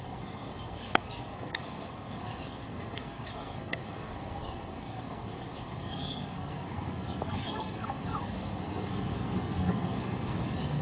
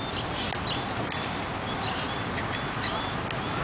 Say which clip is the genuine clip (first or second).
second